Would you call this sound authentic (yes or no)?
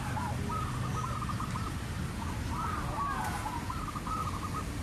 yes